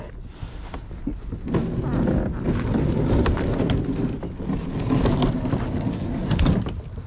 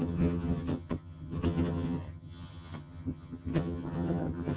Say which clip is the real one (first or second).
first